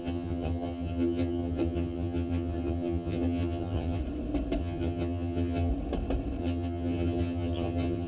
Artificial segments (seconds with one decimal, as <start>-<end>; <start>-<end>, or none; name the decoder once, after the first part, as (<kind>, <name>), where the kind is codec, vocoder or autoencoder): 0.0-4.0 (vocoder, HiFi-GAN); 4.6-5.7; 6.4-8.1

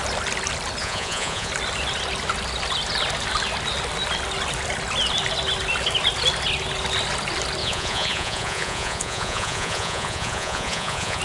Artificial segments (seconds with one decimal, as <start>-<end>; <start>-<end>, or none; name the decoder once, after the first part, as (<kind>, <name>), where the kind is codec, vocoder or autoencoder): 0.8-1.5 (vocoder, Vocos); 7.6-11.2

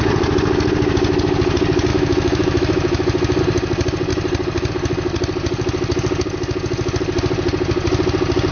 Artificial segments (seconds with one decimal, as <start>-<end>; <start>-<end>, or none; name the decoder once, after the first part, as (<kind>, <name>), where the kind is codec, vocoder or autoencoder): 1.9-3.4 (autoencoder, DAC-VAE)

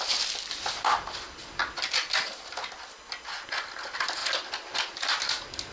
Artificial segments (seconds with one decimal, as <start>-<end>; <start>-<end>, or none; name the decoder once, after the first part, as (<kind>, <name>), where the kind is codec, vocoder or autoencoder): none

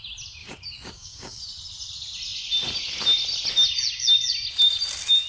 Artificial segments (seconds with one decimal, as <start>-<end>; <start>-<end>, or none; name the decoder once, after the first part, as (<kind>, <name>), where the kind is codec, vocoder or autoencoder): 0.4-1.4 (codec, DAC)